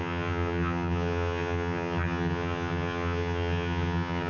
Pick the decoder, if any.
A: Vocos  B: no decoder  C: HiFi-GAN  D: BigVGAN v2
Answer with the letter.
C